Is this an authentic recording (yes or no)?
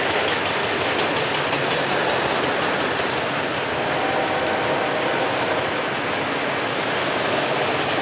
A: yes